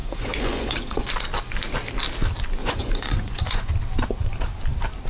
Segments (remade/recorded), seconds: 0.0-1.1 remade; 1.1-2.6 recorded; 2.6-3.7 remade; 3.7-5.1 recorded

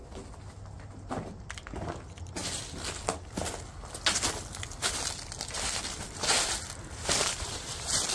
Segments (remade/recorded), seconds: 0.0-8.1 recorded

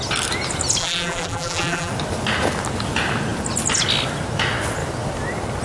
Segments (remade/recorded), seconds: 0.0-0.8 recorded; 0.8-1.9 remade; 1.9-5.6 recorded

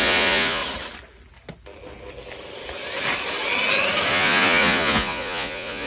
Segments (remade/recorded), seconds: 0.0-0.6 remade; 0.6-4.1 recorded; 4.1-5.9 remade